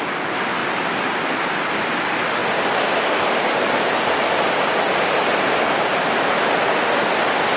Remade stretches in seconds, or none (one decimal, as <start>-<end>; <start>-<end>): 0.6-2.0